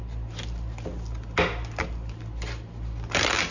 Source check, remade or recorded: recorded